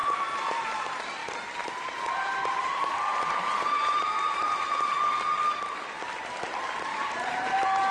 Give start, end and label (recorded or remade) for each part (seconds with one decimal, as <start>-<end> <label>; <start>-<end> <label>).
0.0-0.7 remade; 0.7-1.2 recorded; 1.2-4.7 remade; 4.7-6.9 recorded; 6.9-7.9 remade